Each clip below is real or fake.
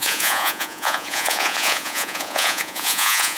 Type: fake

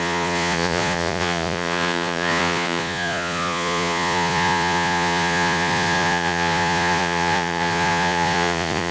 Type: fake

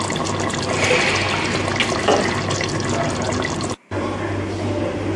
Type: real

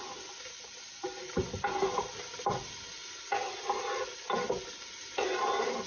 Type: real